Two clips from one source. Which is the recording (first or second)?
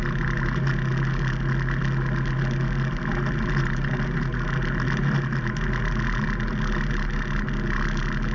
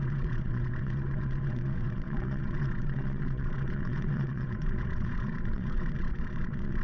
first